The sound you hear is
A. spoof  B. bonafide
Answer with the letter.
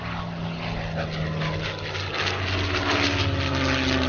B